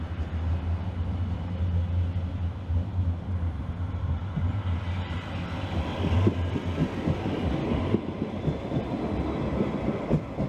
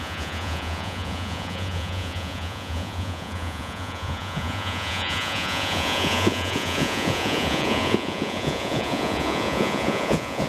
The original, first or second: first